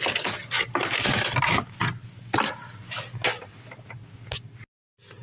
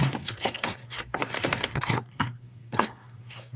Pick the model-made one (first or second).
second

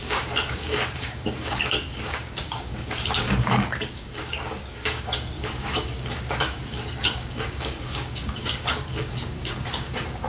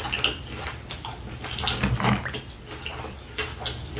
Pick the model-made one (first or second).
first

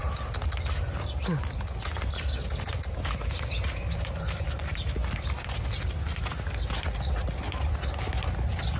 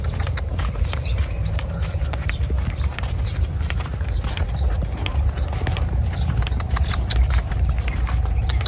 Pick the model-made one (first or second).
second